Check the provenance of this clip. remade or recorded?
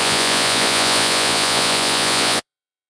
remade